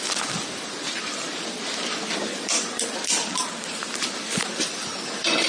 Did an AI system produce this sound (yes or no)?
yes